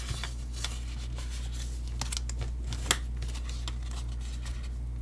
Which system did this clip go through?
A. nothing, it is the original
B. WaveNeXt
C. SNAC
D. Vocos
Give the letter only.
A